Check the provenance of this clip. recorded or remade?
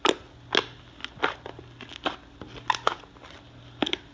recorded